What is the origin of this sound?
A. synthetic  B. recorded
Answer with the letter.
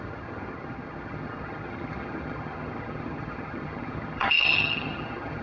A